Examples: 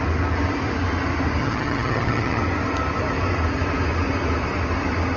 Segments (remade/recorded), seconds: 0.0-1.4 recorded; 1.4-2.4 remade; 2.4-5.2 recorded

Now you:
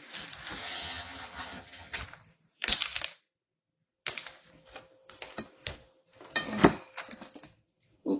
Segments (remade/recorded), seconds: 0.0-0.6 recorded; 0.6-2.0 remade; 2.0-8.2 recorded